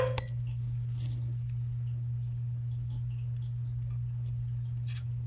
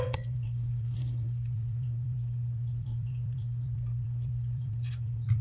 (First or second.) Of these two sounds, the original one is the first